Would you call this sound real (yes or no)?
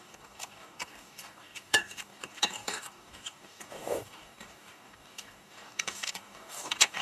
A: no